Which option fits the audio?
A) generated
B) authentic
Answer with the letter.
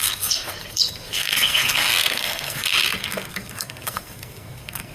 A